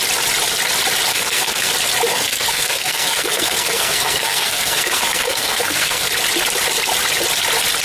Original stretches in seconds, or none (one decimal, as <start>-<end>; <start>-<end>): 0.0-1.1; 1.7-2.1; 6.1-7.8